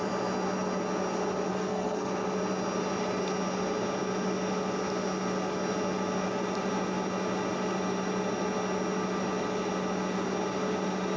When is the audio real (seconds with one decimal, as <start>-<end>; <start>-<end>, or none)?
0.0-1.5; 2.1-11.2